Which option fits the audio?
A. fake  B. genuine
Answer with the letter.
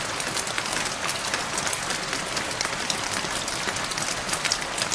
B